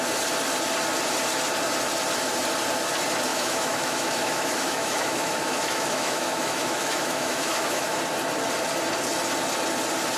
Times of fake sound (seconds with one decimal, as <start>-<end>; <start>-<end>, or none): 3.3-8.0